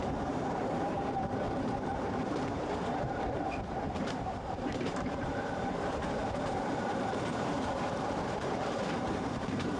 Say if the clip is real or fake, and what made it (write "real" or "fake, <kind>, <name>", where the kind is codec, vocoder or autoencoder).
fake, vocoder, BigVGAN v2